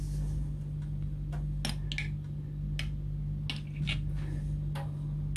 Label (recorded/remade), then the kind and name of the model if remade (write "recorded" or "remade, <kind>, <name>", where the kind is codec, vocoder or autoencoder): recorded